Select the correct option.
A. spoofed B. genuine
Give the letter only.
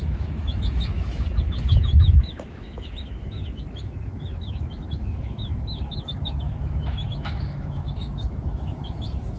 A